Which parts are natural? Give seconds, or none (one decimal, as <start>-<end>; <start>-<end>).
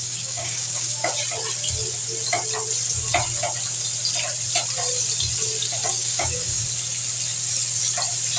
1.1-5.9; 6.6-8.4